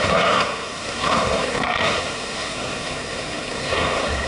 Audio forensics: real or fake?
fake